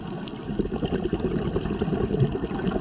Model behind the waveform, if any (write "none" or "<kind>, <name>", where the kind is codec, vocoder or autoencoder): none